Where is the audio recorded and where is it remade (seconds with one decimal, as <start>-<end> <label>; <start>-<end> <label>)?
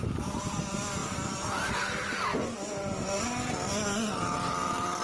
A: 0.0-1.0 recorded; 1.0-1.7 remade; 1.7-2.3 recorded; 2.3-3.0 remade; 3.0-5.0 recorded